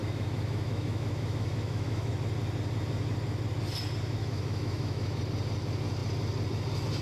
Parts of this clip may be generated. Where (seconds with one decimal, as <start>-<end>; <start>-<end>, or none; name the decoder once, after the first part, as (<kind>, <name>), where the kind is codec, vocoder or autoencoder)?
0.0-2.1 (autoencoder, DAC-VAE); 4.2-5.2